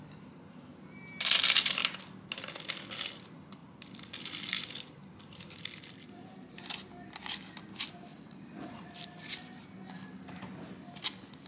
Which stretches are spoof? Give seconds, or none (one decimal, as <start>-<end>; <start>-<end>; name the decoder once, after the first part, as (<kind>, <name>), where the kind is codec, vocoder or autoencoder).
3.6-5.4 (vocoder, BigVGAN v2); 8.1-9.8